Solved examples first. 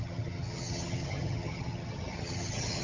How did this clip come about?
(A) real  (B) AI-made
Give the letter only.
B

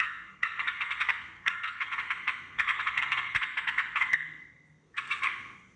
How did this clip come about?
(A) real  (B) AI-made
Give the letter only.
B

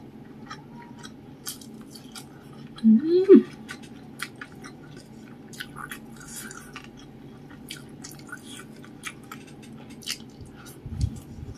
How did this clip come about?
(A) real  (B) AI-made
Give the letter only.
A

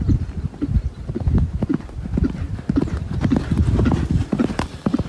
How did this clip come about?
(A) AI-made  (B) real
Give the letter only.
A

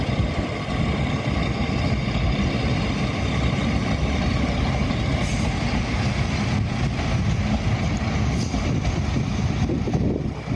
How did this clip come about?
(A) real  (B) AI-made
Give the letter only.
A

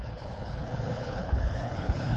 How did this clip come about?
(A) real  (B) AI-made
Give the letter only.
B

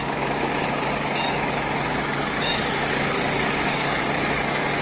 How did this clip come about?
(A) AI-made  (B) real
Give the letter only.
A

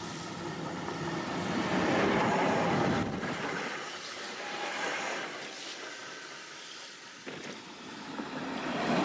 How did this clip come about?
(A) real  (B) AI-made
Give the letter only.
B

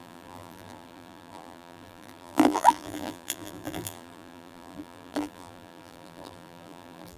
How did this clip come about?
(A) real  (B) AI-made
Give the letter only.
B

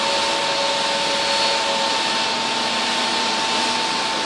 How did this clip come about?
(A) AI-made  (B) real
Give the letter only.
B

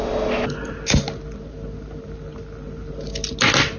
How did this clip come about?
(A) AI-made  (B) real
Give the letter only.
B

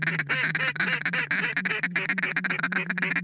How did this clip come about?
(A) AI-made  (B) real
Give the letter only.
B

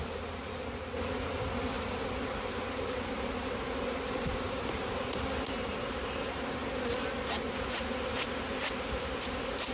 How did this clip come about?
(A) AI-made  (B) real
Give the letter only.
B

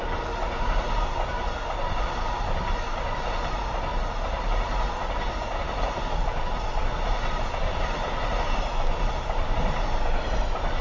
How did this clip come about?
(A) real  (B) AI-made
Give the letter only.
A